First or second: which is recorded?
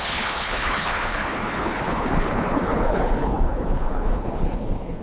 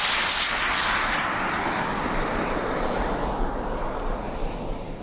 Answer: second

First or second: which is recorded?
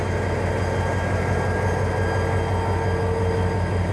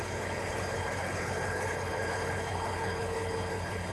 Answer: first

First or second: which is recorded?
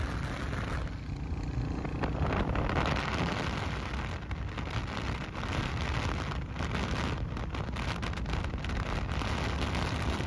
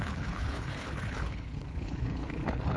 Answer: first